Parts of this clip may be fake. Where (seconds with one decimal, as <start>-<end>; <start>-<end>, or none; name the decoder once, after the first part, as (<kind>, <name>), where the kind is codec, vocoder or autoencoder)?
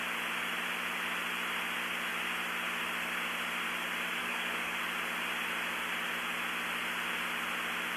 4.2-4.8 (codec, DAC)